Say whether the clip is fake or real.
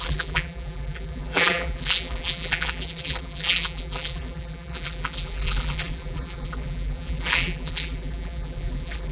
fake